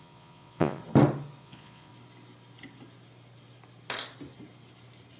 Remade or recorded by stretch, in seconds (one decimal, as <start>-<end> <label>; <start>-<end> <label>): 0.0-0.8 remade; 0.8-1.4 recorded; 1.4-1.9 remade; 1.9-5.2 recorded